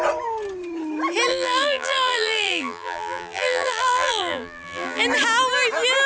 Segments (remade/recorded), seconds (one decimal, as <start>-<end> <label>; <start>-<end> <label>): 0.0-1.3 recorded; 1.3-5.0 remade; 5.0-6.1 recorded